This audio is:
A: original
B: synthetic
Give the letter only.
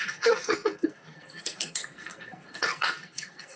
B